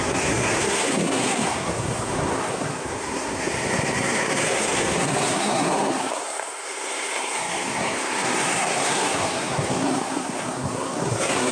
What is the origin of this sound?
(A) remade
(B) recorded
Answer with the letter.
A